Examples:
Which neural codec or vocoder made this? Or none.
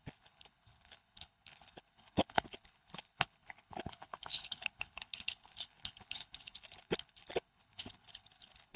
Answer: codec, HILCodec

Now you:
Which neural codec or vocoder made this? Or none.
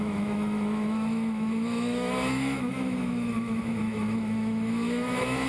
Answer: autoencoder, DAC-VAE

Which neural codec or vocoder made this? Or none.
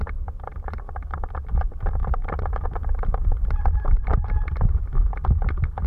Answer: vocoder, BigVGAN v2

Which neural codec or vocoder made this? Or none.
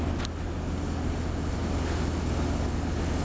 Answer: none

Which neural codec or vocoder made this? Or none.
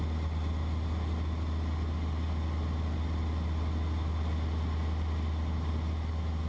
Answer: none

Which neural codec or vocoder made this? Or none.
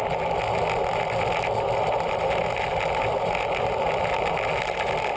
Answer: none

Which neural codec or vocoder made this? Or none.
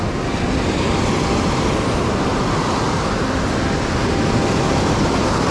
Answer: none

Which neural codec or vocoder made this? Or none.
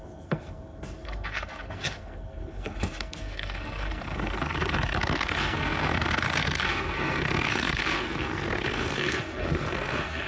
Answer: codec, SNAC